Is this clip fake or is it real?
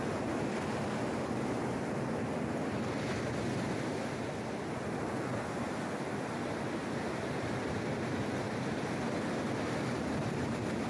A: real